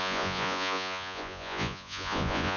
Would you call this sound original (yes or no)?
no